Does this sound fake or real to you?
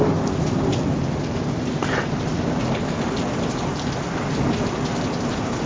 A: real